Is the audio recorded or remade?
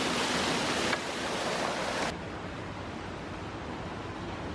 recorded